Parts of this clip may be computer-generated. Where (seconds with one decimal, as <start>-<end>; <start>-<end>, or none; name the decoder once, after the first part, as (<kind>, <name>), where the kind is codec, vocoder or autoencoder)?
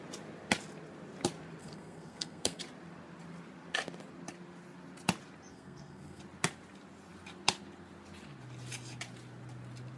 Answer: 1.6-2.6 (codec, SNAC); 5.5-6.2